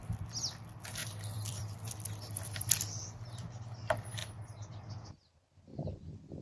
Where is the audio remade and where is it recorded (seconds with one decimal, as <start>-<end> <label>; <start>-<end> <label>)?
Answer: 0.0-1.0 recorded; 1.0-2.7 remade; 2.7-6.4 recorded